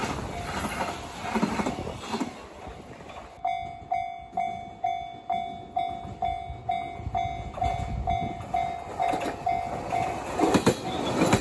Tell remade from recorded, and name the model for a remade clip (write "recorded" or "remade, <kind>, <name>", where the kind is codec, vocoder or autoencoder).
recorded